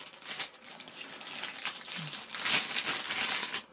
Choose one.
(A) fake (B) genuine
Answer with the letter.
B